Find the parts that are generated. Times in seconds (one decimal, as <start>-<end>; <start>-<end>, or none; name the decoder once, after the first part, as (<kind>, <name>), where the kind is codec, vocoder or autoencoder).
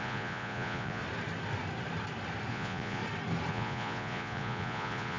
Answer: 0.0-1.0 (vocoder, Vocos); 2.5-3.0; 3.5-5.2